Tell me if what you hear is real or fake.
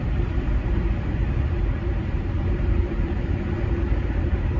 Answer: fake